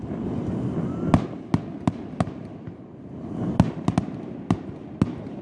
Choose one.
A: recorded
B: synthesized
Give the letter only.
A